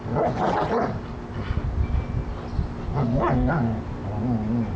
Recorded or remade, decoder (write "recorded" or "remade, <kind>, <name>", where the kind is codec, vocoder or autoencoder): recorded